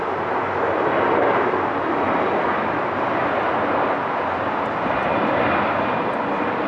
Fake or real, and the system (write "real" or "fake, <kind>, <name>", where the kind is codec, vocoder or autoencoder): real